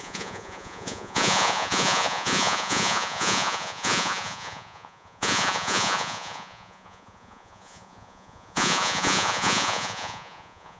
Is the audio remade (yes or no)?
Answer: yes